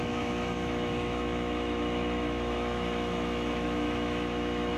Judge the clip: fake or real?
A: fake